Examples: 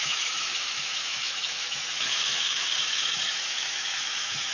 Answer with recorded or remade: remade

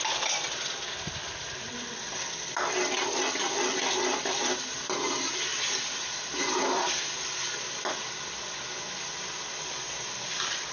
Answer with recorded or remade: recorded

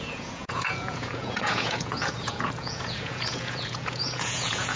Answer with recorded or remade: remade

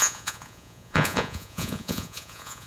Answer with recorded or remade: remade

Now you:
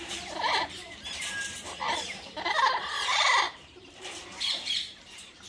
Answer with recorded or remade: remade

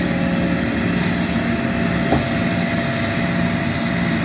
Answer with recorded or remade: recorded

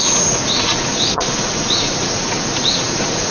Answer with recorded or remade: remade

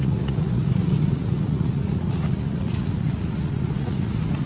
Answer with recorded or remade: remade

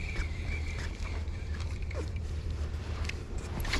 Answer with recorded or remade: remade